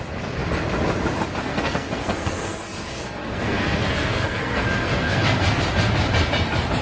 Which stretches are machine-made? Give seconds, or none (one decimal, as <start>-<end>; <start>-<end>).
1.5-5.6